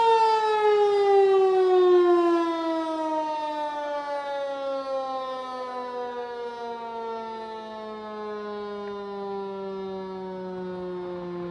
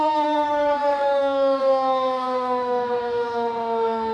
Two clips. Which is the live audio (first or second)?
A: first